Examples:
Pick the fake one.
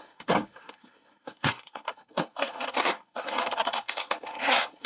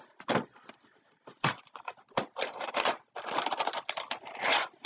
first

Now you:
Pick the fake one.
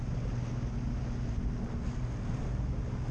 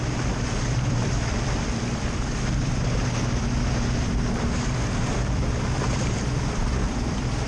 second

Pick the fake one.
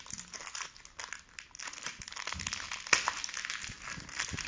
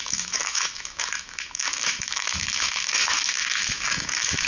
second